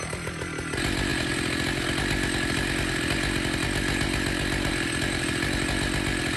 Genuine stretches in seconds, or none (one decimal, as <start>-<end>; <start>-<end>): 0.0-6.4